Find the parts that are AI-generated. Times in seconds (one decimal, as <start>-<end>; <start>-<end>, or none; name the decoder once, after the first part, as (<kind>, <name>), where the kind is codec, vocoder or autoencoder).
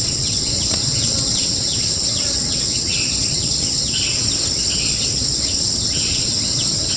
0.0-7.0 (vocoder, WaveNeXt)